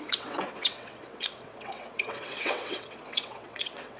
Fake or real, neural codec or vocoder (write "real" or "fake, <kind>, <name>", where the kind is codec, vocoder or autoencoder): fake, vocoder, WaveNeXt